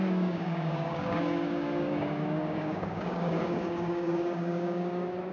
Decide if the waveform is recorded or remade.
remade